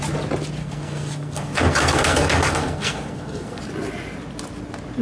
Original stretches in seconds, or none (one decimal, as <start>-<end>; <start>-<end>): 0.0-0.6; 3.6-5.0